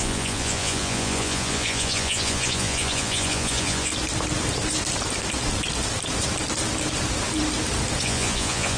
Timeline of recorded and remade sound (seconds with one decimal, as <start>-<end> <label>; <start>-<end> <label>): 0.0-3.9 remade; 3.9-8.0 recorded; 8.0-8.8 remade

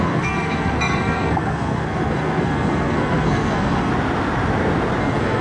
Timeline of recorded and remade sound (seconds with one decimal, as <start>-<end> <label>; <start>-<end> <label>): 0.0-3.9 remade; 3.9-5.0 recorded; 5.0-5.4 remade

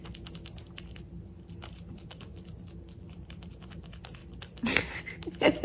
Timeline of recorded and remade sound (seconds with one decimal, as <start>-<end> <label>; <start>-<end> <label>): 0.0-5.6 recorded

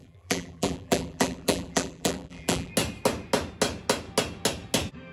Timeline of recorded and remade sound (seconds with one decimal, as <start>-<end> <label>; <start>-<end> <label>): 0.0-2.7 remade; 2.7-5.1 recorded

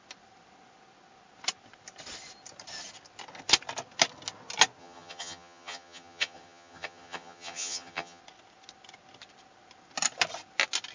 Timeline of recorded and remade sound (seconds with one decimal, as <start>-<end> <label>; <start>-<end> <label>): 0.0-4.8 recorded; 4.8-8.2 remade; 8.2-10.9 recorded

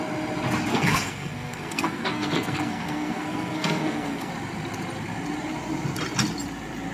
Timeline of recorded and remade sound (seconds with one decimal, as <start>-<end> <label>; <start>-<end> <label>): 0.0-0.7 recorded; 0.7-4.3 remade; 4.3-6.9 recorded

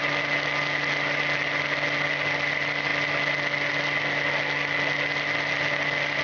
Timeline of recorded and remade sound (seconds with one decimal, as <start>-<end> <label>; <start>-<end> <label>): 0.0-6.2 recorded

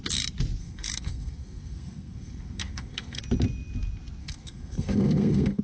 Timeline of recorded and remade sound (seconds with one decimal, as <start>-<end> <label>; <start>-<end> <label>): 0.0-0.6 recorded; 0.6-3.2 remade; 3.2-4.2 recorded; 4.2-5.6 remade